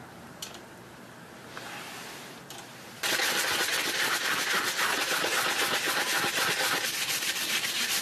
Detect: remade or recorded remade